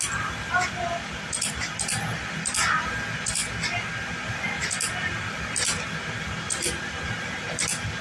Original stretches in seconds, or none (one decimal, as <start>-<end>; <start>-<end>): 0.0-8.0